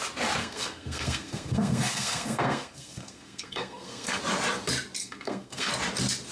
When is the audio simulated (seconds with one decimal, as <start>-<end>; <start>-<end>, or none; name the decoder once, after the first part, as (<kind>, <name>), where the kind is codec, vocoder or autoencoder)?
0.4-4.2 (codec, SNAC); 5.0-5.7